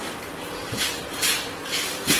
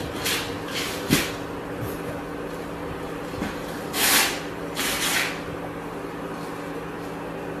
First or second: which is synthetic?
first